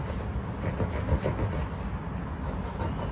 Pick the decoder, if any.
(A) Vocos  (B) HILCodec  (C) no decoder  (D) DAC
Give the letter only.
C